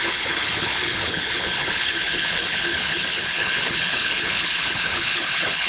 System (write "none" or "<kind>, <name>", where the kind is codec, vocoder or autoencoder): codec, HILCodec